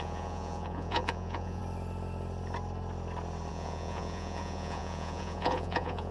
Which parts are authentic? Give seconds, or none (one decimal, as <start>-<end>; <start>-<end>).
1.6-3.5